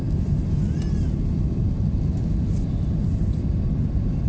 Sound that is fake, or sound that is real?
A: real